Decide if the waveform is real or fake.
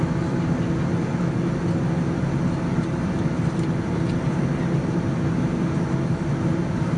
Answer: real